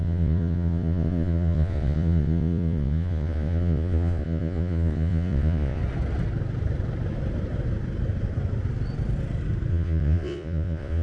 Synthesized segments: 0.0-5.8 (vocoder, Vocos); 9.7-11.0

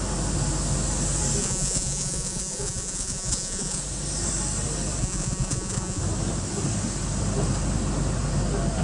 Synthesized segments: 1.4-3.8 (vocoder, Vocos); 5.0-6.0

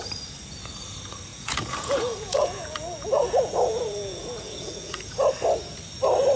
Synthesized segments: 1.3-5.1 (vocoder, Vocos)

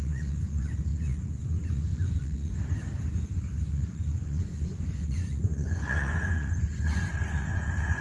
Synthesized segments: 0.0-2.8 (vocoder, Vocos); 3.6-8.0

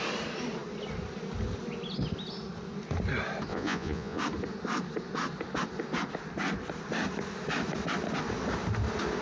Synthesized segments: 3.5-4.2 (vocoder, Vocos)

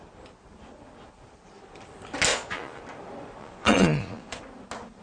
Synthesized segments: 2.3-2.8 (vocoder, Vocos); 3.4-4.4